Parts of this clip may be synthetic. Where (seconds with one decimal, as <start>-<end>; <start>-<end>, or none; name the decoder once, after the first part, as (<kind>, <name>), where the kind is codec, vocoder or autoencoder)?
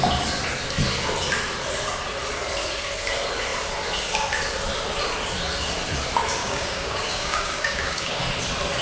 6.4-8.2 (codec, DAC)